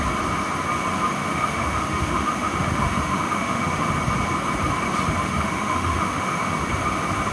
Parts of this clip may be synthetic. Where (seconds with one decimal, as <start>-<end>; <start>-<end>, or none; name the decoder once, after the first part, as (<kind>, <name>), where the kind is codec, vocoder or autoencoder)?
1.2-3.9 (autoencoder, DAC-VAE); 5.2-6.7